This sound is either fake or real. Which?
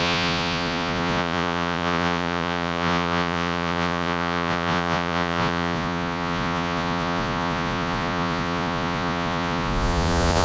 fake